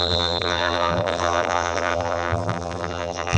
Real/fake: fake